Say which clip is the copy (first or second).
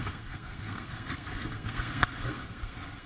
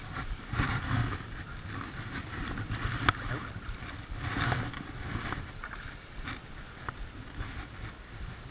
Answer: first